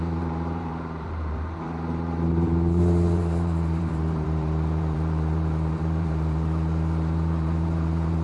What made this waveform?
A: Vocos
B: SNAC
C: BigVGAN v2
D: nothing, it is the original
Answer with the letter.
C